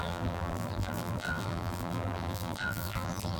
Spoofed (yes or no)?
yes